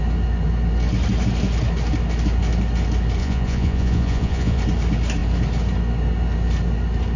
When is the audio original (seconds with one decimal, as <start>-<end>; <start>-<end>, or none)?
0.0-3.2; 4.6-7.2